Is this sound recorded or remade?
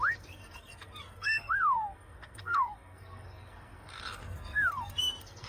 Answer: remade